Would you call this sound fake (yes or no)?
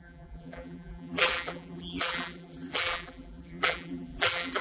yes